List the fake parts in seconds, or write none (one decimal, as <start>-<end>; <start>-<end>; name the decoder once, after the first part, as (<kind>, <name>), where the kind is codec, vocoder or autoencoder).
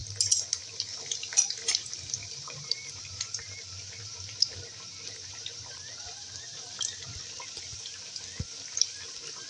2.2-7.2 (vocoder, BigVGAN v2); 7.7-8.2